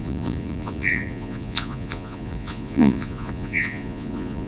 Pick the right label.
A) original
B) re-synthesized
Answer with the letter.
B